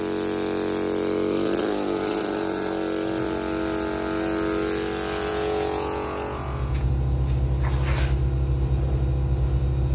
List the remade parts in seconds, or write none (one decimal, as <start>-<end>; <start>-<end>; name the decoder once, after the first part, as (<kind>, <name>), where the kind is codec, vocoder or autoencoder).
5.3-6.9 (vocoder, Vocos)